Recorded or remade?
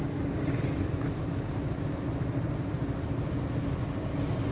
recorded